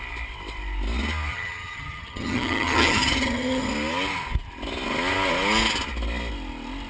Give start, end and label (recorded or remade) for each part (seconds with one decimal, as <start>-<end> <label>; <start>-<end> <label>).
0.0-1.3 recorded; 1.3-3.7 remade; 3.7-6.9 recorded